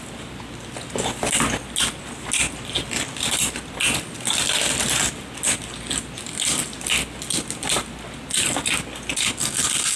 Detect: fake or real real